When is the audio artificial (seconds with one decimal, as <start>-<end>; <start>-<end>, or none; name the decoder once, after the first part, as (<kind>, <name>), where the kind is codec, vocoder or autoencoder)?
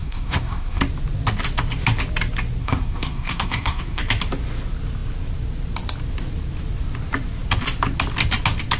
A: 0.0-0.8 (codec, SNAC); 2.6-4.0